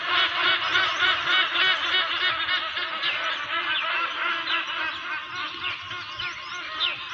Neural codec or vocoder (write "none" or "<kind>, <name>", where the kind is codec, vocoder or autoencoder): none